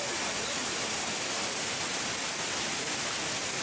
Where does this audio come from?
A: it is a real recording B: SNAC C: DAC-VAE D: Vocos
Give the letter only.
A